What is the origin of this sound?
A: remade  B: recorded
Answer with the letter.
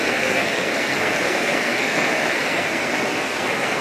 A